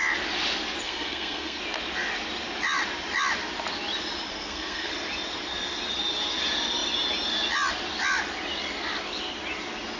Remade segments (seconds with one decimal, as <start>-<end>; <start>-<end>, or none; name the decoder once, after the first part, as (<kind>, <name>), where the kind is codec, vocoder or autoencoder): 0.8-1.6 (codec, SNAC); 4.3-4.9